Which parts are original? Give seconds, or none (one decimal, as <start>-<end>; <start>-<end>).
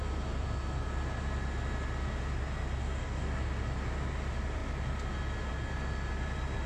0.0-2.8; 3.4-6.7